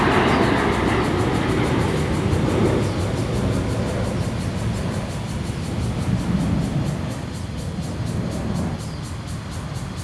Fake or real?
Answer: real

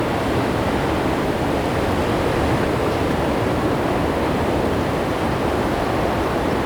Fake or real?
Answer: real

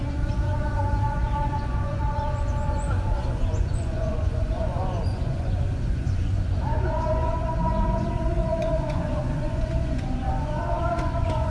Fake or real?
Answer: fake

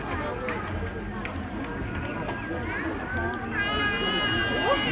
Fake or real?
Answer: real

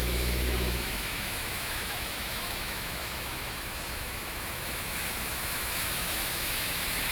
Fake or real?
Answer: fake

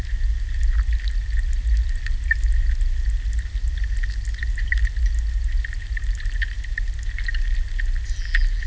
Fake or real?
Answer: real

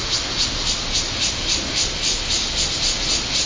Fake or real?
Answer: real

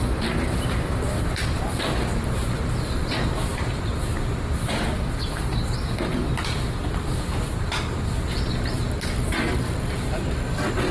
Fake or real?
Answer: real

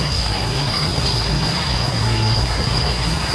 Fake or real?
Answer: fake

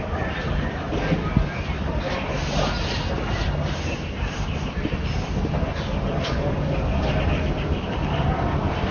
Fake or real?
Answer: real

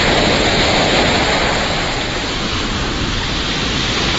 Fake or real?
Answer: real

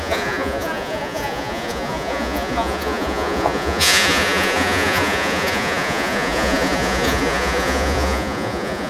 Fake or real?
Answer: fake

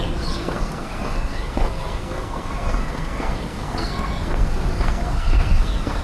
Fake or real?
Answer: fake